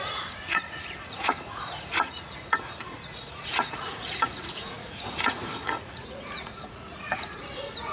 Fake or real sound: fake